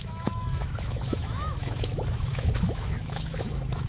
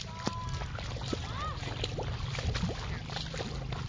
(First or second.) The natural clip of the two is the second